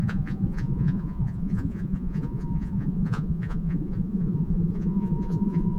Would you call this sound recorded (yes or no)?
no